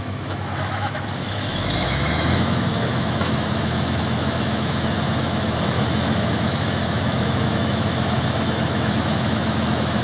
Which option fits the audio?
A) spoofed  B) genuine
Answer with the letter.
A